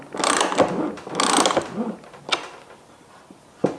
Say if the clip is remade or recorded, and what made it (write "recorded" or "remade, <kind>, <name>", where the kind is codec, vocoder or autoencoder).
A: recorded